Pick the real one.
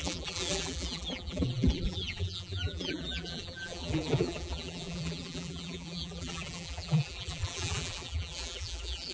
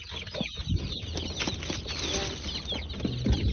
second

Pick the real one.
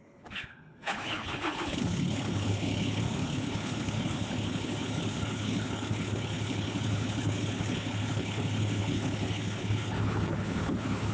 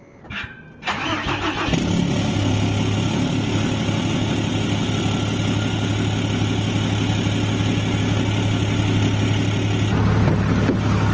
second